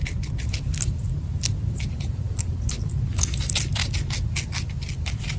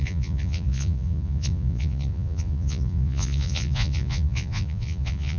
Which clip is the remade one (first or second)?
second